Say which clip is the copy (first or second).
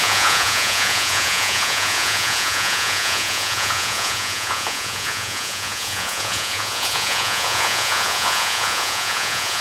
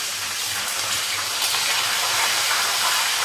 first